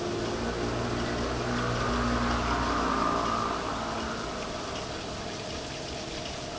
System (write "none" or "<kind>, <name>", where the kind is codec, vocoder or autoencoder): none